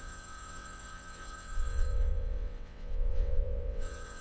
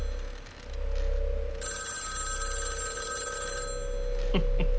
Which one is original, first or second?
second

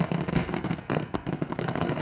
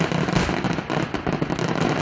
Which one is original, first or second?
second